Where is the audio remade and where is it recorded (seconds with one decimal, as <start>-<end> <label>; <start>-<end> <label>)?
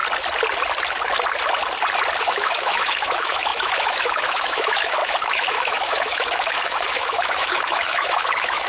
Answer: 0.0-2.2 recorded; 2.2-8.7 remade